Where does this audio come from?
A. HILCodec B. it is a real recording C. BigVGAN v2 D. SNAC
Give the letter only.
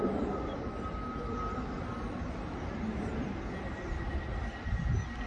B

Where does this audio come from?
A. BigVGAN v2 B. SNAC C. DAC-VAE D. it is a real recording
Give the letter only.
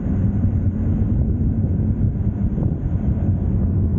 D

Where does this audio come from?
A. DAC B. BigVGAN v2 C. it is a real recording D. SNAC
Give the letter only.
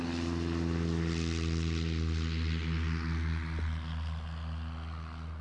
C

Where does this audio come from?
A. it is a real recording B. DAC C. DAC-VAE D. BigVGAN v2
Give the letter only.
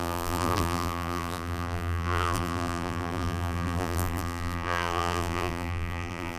D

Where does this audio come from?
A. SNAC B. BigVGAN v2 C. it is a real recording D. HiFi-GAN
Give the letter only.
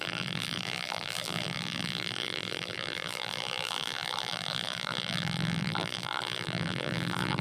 B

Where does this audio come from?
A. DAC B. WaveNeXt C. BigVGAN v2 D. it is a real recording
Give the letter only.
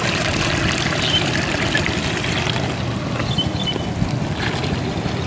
D